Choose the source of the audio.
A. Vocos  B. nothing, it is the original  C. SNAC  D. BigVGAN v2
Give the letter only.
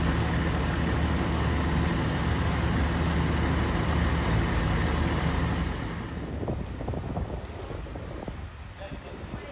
B